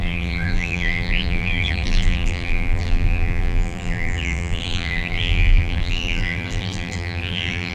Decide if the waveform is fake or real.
fake